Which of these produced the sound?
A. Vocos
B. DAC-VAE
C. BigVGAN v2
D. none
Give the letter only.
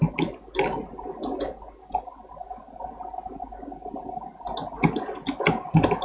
D